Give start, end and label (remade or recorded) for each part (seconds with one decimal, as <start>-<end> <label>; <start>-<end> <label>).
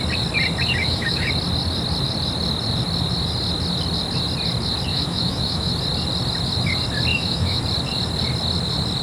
0.0-0.8 recorded; 0.8-1.3 remade; 1.3-4.9 recorded; 4.9-5.7 remade; 5.7-7.1 recorded; 7.1-7.6 remade; 7.6-9.0 recorded